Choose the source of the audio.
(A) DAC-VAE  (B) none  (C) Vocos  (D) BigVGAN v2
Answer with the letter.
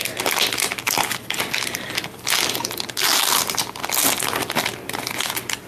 B